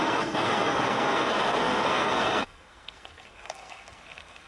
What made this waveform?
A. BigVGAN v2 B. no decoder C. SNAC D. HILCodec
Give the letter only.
C